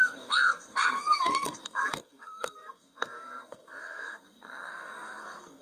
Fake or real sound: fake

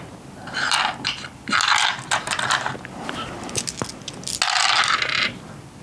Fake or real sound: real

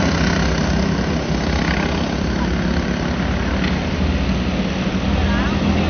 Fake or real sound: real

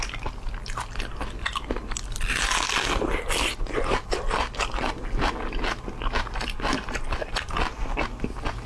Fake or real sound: real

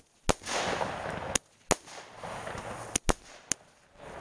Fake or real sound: real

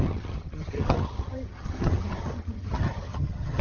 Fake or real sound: fake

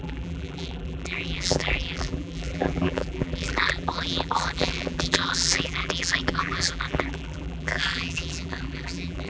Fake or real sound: fake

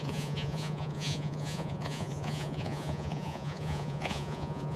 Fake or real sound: fake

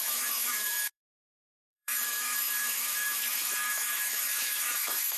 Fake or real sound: fake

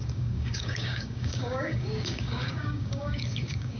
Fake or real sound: fake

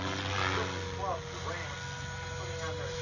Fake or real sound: real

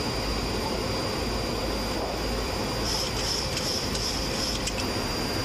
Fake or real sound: fake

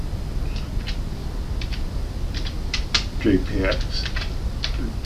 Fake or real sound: real